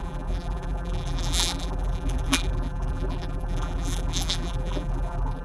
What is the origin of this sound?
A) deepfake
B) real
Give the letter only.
A